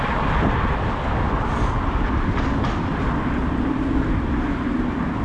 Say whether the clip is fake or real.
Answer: real